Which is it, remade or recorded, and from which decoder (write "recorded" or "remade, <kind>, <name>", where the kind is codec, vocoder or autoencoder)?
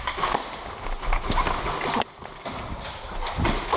recorded